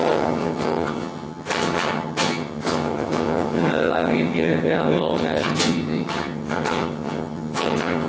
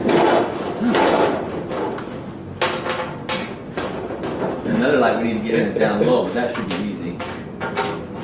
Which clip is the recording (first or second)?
second